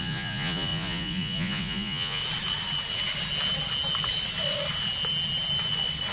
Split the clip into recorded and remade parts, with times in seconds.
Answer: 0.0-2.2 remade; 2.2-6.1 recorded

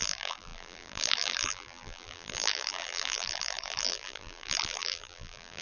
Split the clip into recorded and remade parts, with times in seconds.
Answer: 0.0-5.6 remade

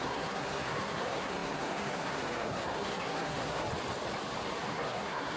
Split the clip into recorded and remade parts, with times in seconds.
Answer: 0.0-3.7 remade; 3.7-4.7 recorded; 4.7-5.4 remade

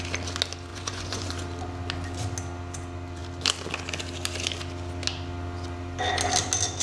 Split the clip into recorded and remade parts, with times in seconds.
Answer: 0.0-0.7 recorded; 0.7-1.3 remade; 1.3-6.8 recorded

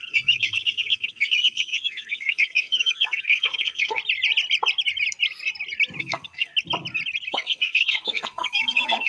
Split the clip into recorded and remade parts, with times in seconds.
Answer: 0.0-4.0 remade; 4.0-6.0 recorded; 6.0-6.5 remade; 6.5-7.3 recorded; 7.3-9.1 remade

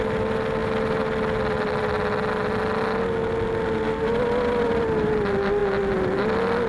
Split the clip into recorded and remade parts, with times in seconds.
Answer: 0.0-6.7 recorded

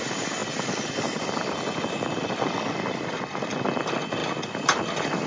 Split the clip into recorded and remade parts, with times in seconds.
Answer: 0.0-5.3 recorded

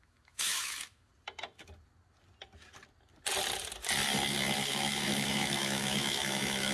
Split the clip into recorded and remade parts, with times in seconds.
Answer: 0.0-1.1 remade; 1.1-4.7 recorded; 4.7-6.7 remade